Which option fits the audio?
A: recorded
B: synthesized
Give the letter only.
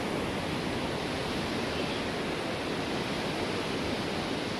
A